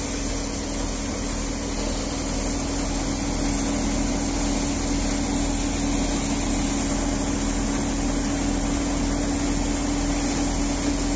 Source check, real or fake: real